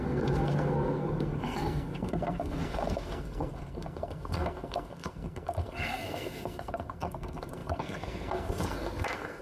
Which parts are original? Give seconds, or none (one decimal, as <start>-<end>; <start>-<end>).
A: none